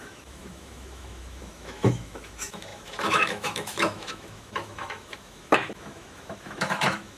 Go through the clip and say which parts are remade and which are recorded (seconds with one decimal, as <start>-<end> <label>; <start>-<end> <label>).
0.0-7.2 remade